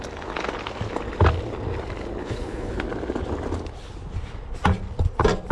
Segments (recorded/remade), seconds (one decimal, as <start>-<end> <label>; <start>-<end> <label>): 0.0-2.2 recorded; 2.2-2.8 remade; 2.8-5.5 recorded